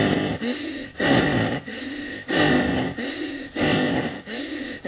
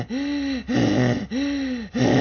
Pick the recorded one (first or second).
second